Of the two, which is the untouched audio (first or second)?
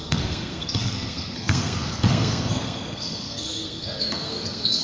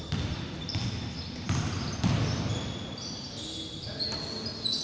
second